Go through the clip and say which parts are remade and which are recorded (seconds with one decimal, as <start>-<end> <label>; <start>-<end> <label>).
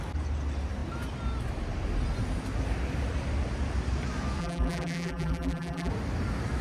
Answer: 0.0-4.4 recorded; 4.4-5.9 remade; 5.9-6.6 recorded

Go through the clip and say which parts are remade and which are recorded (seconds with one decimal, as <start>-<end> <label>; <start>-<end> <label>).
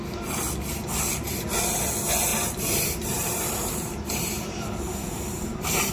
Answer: 0.0-2.3 recorded; 2.3-5.9 remade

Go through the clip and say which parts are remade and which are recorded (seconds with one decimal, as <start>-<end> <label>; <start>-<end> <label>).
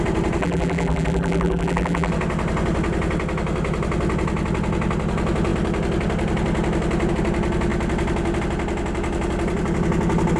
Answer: 0.0-0.4 recorded; 0.4-2.1 remade; 2.1-10.4 recorded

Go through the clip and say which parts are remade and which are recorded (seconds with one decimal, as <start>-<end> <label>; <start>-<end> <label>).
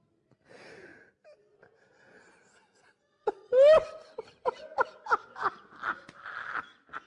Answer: 0.0-0.9 remade; 0.9-5.2 recorded; 5.2-7.1 remade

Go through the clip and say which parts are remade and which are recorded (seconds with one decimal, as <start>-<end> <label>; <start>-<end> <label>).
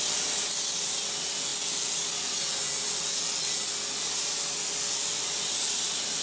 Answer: 0.0-6.2 recorded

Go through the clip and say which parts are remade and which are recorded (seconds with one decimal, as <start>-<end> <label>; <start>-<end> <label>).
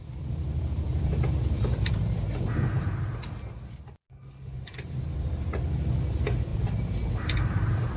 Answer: 0.0-8.0 recorded